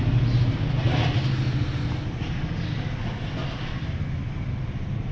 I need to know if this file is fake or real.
real